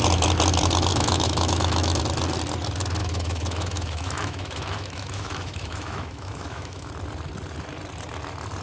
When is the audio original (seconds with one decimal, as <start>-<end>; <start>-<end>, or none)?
0.0-0.9; 2.0-3.0; 6.9-8.6